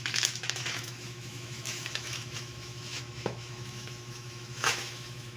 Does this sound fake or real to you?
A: fake